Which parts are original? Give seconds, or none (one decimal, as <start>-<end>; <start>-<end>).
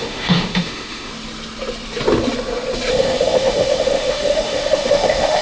1.1-2.9